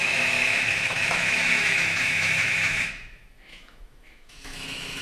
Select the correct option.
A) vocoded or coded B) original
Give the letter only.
A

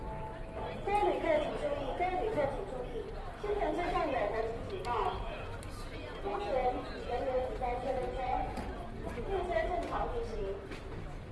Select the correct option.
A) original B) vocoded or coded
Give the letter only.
A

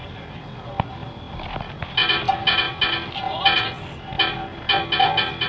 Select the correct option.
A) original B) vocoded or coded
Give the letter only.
A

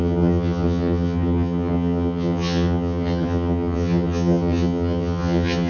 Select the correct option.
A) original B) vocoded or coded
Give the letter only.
B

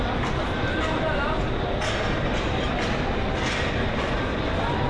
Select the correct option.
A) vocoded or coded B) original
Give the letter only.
B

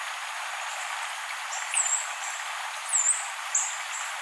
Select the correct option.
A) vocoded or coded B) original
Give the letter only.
B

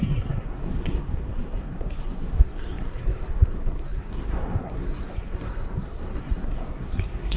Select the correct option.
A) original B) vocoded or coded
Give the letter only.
B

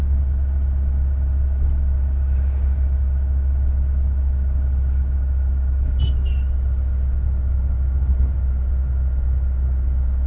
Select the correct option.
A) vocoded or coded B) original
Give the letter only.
B